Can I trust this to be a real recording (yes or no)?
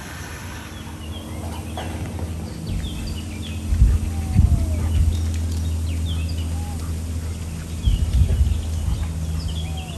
yes